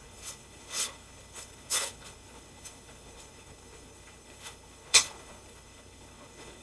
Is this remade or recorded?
remade